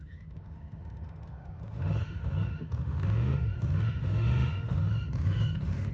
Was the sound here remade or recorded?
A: remade